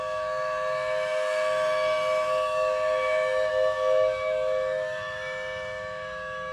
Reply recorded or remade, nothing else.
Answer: remade